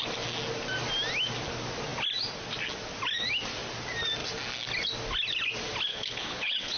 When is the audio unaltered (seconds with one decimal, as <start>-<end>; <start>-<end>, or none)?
0.0-5.9